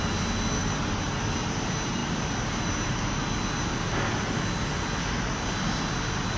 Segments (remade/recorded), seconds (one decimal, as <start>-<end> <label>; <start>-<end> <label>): 0.0-0.6 recorded; 0.6-1.1 remade; 1.1-6.4 recorded